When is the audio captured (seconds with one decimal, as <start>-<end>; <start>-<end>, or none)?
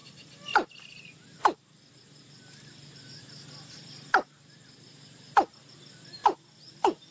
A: 0.0-6.2